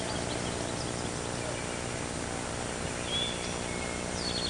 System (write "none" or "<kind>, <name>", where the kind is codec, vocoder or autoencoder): none